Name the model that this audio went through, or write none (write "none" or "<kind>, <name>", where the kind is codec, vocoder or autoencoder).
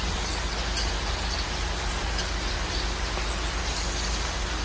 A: none